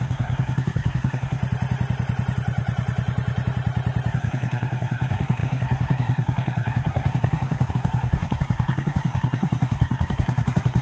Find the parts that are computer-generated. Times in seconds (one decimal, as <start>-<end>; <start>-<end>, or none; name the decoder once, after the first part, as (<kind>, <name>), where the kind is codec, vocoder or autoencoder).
0.0-1.4 (codec, SNAC); 4.1-10.8